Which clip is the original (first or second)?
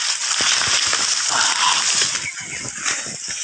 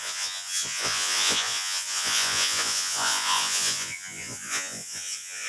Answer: first